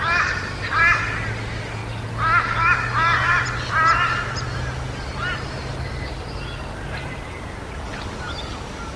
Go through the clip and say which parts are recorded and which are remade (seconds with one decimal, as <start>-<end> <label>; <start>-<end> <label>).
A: 0.0-9.0 recorded